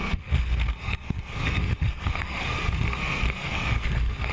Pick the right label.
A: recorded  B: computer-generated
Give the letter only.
B